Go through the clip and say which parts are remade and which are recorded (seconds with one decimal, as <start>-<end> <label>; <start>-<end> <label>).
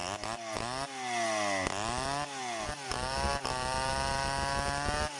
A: 0.0-5.2 recorded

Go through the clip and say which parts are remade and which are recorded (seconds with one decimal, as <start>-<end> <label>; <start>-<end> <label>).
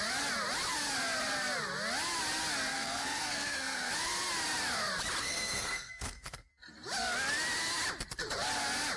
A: 0.0-2.7 recorded; 2.7-3.9 remade; 3.9-5.2 recorded; 5.2-6.5 remade; 6.5-9.0 recorded